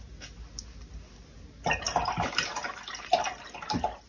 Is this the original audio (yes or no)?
yes